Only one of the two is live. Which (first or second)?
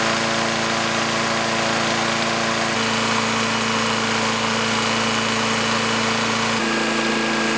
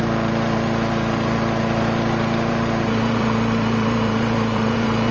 first